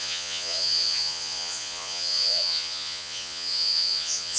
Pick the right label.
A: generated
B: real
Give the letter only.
A